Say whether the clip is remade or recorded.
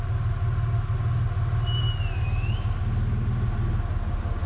recorded